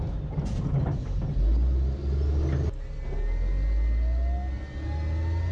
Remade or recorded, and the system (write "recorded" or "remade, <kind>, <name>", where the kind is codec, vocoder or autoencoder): recorded